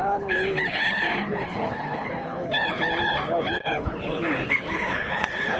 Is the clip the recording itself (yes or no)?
no